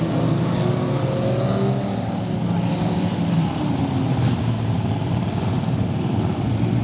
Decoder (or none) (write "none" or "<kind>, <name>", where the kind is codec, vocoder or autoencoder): none